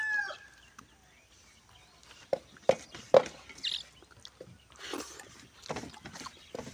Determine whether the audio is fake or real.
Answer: real